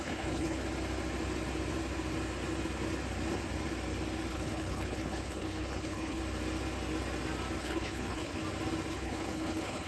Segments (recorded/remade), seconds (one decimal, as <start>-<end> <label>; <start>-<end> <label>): 0.0-0.6 remade; 0.6-4.3 recorded; 4.3-6.2 remade; 6.2-7.6 recorded; 7.6-8.4 remade; 8.4-8.9 recorded; 8.9-9.9 remade